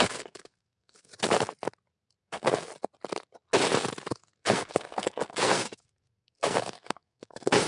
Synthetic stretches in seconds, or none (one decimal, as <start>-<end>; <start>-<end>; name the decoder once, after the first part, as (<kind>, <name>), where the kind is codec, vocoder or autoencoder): 0.0-1.1 (codec, SNAC); 2.2-2.7; 4.1-7.7